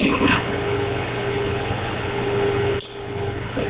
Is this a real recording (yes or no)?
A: no